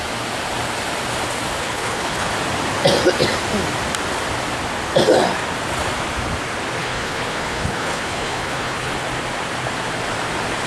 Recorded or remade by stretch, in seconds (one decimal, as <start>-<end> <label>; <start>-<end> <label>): 0.0-1.6 recorded; 1.6-2.3 remade; 2.3-6.8 recorded; 6.8-8.9 remade; 8.9-10.7 recorded